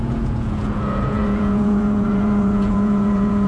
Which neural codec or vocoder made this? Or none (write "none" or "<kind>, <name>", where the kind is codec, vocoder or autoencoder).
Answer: vocoder, Vocos